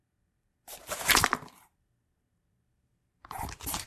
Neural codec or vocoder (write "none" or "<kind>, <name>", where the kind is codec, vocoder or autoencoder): vocoder, BigVGAN v2